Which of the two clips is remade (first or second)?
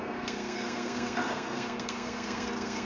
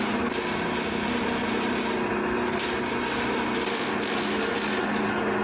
first